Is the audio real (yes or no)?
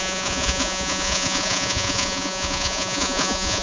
no